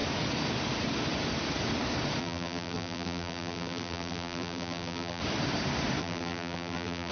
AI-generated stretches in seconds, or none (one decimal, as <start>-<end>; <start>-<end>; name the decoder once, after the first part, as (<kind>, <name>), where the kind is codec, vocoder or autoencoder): 2.2-5.2 (vocoder, BigVGAN v2); 6.0-7.1